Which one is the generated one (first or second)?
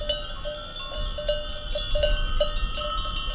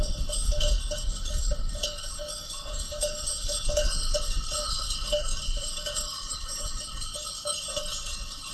second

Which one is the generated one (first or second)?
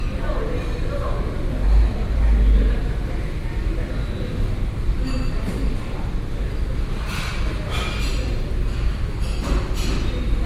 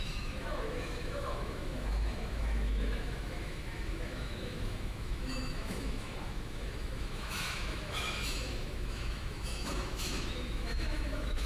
second